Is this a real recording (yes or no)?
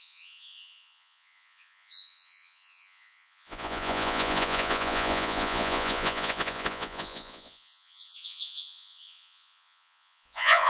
no